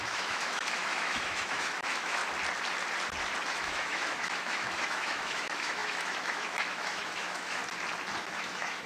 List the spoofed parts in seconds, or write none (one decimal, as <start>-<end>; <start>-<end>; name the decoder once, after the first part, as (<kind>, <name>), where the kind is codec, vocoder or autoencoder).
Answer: 0.0-2.2 (autoencoder, DAC-VAE); 3.5-7.6; 8.2-8.9